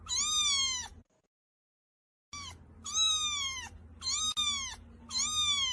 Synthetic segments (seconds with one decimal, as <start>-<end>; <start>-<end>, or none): none